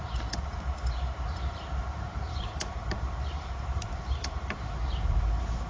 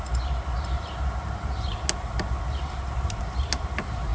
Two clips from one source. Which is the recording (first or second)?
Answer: second